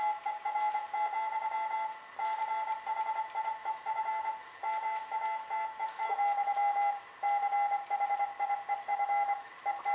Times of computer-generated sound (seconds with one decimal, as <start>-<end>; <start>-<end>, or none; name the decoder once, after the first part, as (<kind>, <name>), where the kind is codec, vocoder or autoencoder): 3.5-7.0 (autoencoder, DAC-VAE); 8.9-9.5